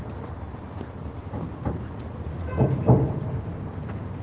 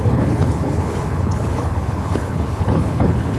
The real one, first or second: first